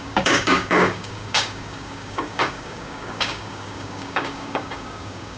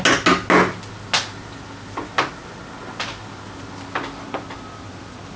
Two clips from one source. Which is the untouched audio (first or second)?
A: second